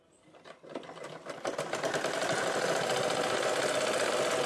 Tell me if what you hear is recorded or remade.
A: recorded